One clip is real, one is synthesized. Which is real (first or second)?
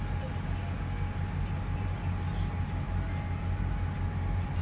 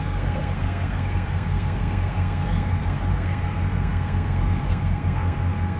first